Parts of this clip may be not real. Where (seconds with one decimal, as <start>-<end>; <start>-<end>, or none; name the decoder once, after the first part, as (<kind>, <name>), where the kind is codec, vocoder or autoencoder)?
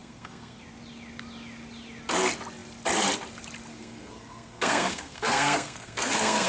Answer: 0.0-0.6 (codec, SNAC); 3.7-6.5